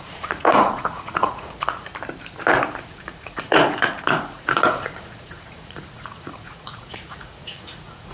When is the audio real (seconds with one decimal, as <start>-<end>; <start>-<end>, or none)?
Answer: 1.9-2.8